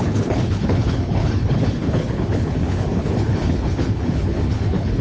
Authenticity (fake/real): fake